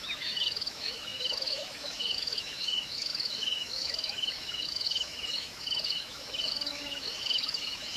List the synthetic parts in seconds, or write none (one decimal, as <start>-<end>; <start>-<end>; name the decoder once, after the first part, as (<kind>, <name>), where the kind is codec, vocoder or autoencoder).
0.0-8.0 (autoencoder, DAC-VAE)